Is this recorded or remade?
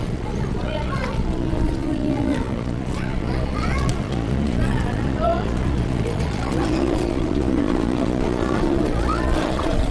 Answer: remade